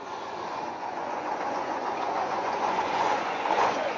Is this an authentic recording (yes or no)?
no